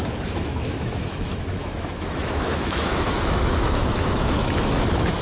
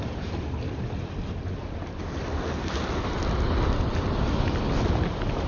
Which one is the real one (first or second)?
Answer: second